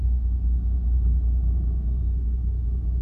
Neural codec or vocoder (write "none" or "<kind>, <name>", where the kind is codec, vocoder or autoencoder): none